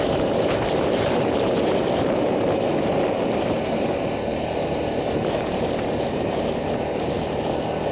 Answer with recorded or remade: remade